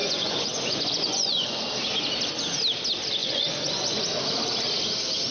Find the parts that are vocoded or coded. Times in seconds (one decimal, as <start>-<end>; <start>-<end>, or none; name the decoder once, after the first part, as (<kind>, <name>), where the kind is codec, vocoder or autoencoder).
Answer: 0.0-1.6 (vocoder, Vocos); 3.2-4.0